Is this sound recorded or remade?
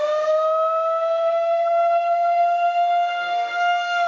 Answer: remade